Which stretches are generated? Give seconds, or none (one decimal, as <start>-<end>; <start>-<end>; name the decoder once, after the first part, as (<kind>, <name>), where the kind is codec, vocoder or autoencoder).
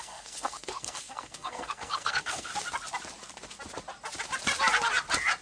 0.0-2.5 (codec, SNAC)